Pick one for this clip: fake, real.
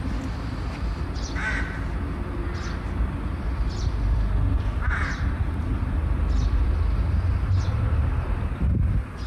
real